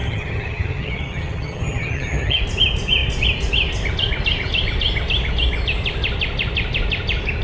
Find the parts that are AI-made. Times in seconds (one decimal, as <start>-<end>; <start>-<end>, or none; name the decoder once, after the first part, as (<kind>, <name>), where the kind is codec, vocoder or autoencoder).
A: 0.0-2.4 (vocoder, HiFi-GAN)